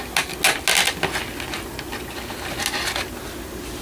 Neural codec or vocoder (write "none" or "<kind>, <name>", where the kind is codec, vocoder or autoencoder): none